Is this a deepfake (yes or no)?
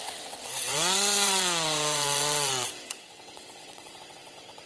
yes